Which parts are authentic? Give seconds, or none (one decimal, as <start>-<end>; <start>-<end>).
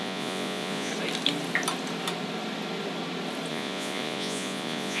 0.9-3.5